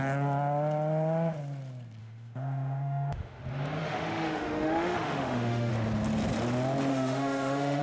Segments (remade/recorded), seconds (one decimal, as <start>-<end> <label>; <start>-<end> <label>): 0.0-2.0 recorded; 2.0-3.4 remade; 3.4-3.8 recorded; 3.8-5.7 remade; 5.7-6.9 recorded; 6.9-7.8 remade